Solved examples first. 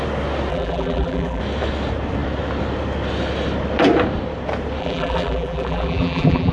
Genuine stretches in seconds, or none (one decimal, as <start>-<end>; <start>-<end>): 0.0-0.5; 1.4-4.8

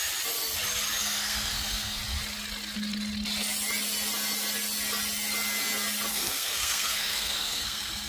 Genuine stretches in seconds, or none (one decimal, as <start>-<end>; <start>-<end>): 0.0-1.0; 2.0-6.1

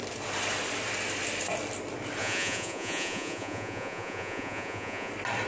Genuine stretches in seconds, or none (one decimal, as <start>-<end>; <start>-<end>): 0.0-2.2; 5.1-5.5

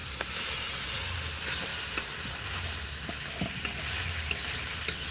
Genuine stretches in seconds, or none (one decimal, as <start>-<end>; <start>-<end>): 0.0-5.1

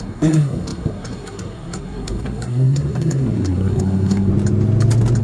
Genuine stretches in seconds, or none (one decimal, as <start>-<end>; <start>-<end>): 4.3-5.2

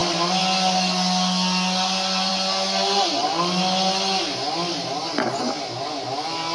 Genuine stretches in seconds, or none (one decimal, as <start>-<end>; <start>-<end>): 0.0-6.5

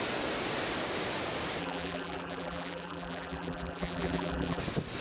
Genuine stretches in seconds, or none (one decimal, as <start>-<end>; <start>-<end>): 0.0-1.6; 4.6-5.0